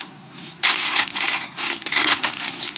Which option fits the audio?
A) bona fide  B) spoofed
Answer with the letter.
B